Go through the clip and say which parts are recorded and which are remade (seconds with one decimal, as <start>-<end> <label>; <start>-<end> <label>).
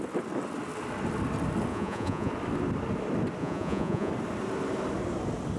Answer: 0.0-1.7 recorded; 1.7-2.3 remade; 2.3-3.4 recorded; 3.4-4.1 remade; 4.1-5.6 recorded